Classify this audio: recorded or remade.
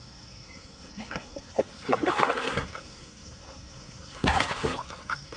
remade